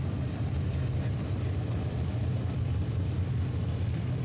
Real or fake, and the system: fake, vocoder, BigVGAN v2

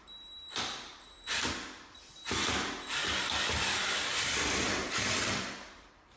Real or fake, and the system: fake, vocoder, BigVGAN v2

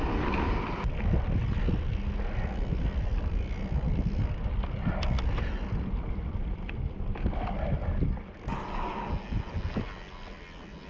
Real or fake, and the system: real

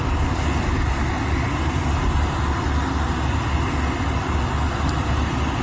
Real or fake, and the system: real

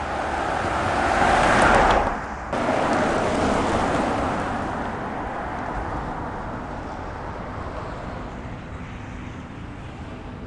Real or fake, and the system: real